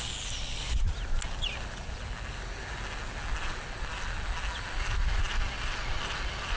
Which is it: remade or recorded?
recorded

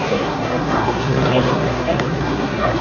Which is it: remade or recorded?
remade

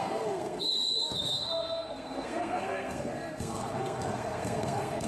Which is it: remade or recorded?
remade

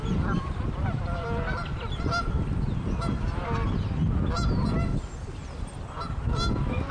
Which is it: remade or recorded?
recorded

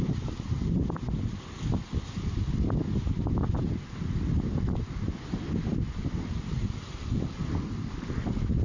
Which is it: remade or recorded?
recorded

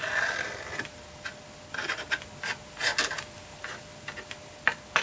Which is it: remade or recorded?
recorded